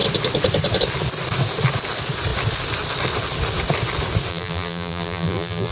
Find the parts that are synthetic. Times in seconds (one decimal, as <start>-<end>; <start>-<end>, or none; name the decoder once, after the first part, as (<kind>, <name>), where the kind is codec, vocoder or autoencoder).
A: 4.3-5.7 (vocoder, BigVGAN v2)